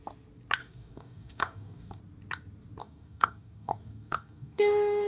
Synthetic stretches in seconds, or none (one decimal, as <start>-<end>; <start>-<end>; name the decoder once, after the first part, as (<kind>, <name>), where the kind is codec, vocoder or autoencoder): 0.6-2.0 (codec, DAC); 2.8-5.1